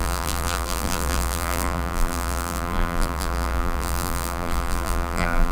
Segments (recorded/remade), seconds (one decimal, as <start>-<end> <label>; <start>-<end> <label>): 0.0-5.5 remade